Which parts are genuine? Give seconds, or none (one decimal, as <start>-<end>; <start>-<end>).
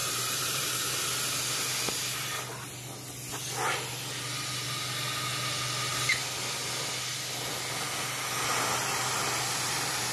0.7-10.1